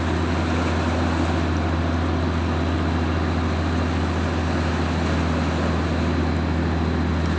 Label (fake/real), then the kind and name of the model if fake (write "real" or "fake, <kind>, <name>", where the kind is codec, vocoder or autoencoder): real